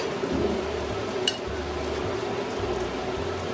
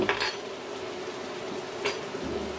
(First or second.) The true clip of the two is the second